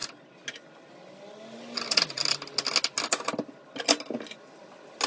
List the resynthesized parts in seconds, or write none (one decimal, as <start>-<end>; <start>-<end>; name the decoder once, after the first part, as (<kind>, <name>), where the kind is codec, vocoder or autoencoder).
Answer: none